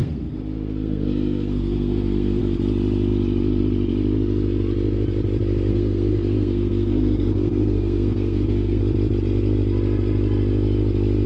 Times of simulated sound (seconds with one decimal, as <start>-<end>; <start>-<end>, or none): 0.0-2.4; 5.7-8.8